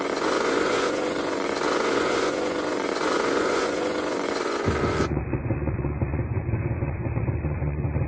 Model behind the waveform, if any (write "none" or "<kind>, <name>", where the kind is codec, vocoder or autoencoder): vocoder, Vocos